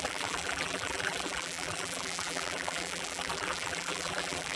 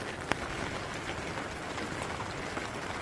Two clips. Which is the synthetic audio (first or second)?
first